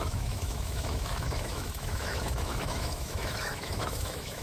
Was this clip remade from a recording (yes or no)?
yes